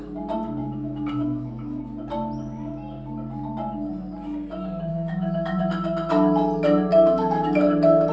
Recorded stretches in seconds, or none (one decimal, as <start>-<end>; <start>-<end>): 0.0-0.6; 1.8-4.9; 5.6-6.9